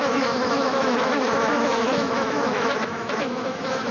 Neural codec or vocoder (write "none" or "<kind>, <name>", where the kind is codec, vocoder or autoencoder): autoencoder, DAC-VAE